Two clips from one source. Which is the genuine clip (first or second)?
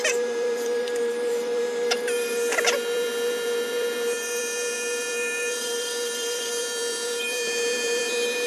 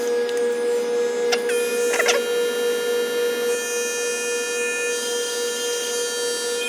second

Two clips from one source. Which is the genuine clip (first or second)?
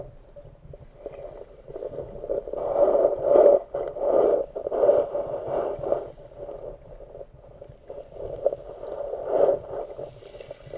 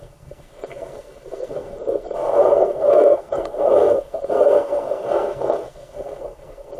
first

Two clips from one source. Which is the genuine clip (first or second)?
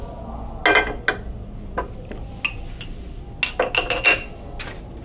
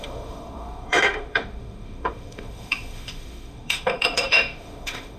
first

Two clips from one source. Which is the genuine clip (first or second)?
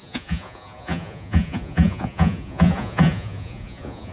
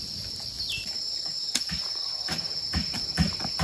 second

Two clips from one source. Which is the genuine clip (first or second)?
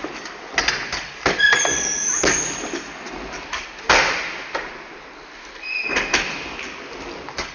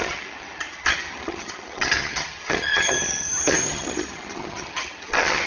first